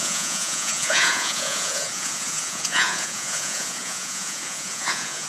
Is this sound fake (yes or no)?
yes